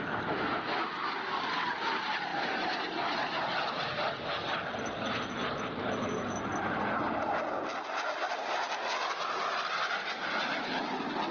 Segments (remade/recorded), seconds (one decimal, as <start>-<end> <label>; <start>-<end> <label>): 0.0-11.3 recorded